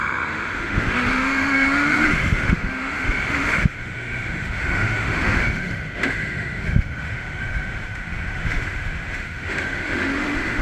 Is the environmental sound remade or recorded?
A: remade